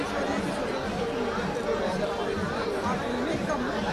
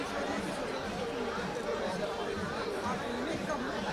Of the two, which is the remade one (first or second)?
second